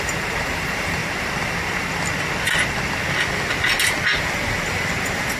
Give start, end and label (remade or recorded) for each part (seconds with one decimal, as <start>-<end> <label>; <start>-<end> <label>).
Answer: 0.0-1.0 remade; 1.0-4.2 recorded; 4.2-5.4 remade